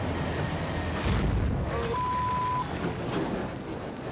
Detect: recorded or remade recorded